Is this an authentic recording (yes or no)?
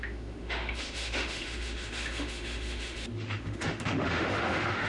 no